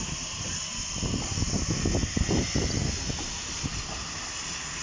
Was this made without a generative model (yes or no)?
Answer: yes